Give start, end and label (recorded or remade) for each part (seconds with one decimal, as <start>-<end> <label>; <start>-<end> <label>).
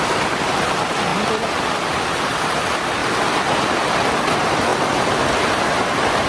0.0-1.1 remade; 1.1-1.9 recorded; 1.9-3.0 remade; 3.0-3.9 recorded; 3.9-4.7 remade; 4.7-5.4 recorded; 5.4-6.3 remade